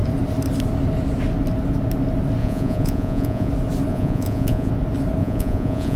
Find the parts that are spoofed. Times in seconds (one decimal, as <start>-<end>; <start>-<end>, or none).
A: 2.4-3.5; 3.9-4.7; 5.2-6.0